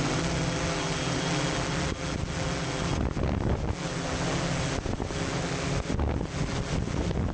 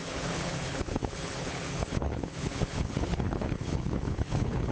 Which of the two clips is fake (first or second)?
second